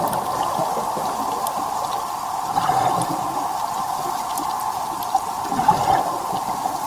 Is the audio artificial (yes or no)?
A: no